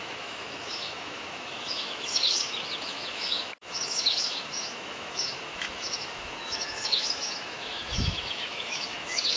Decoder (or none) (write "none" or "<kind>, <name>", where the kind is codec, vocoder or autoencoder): autoencoder, DAC-VAE